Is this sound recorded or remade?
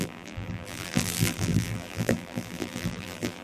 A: remade